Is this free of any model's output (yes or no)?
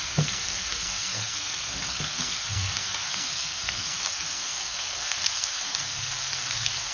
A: no